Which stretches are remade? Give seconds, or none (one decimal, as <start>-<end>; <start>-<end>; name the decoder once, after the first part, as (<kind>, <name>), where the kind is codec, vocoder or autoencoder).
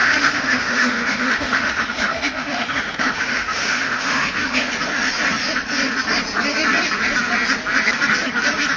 0.0-4.7 (autoencoder, DAC-VAE)